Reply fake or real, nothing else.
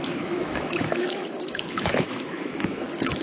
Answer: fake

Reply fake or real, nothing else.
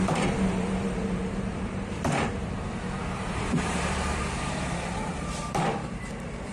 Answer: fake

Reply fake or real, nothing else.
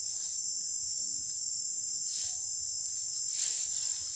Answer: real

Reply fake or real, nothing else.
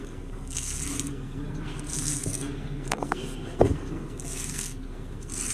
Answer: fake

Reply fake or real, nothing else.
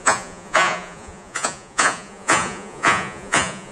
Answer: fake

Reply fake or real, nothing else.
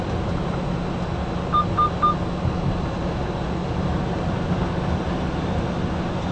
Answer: real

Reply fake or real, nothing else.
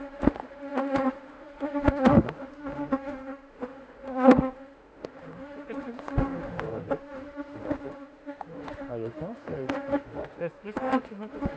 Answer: fake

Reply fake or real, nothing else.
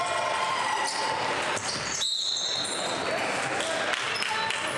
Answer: real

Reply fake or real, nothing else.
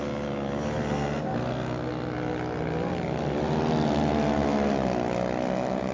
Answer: real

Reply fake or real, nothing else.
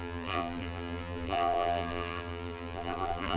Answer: fake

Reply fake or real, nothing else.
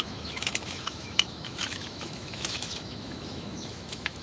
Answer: fake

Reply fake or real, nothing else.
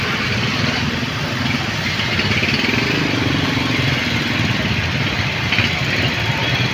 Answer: real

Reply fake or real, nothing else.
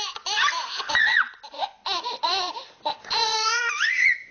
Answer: fake